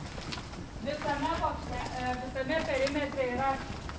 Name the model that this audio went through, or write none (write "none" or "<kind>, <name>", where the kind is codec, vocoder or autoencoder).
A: none